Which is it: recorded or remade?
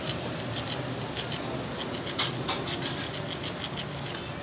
recorded